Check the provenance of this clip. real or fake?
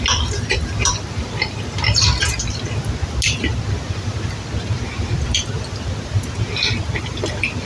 real